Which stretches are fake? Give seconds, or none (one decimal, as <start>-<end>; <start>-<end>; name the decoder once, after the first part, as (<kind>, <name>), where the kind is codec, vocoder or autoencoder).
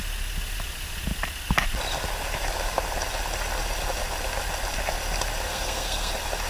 5.5-6.1 (codec, SNAC)